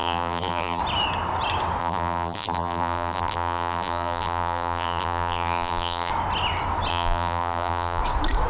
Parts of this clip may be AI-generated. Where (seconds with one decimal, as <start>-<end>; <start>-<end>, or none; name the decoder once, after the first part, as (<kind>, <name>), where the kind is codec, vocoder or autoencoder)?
0.0-0.8 (vocoder, BigVGAN v2); 1.8-6.1; 6.9-8.0

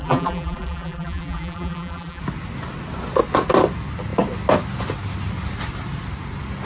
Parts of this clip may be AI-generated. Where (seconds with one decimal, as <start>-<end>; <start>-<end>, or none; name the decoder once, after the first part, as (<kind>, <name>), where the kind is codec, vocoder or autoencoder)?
0.0-2.2 (vocoder, BigVGAN v2)